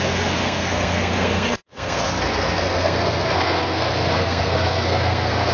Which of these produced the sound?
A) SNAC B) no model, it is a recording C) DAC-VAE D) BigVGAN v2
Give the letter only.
A